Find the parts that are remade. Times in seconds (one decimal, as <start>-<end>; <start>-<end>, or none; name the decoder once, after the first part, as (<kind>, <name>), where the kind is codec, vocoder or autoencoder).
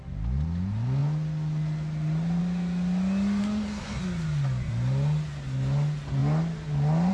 3.4-4.0 (codec, SNAC)